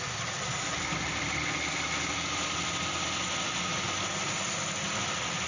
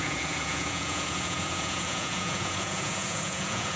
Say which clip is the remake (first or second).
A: second